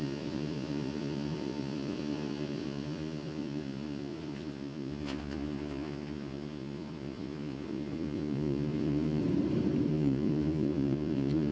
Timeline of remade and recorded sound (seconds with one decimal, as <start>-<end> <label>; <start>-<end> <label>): 0.0-9.2 remade; 9.2-9.9 recorded; 9.9-11.5 remade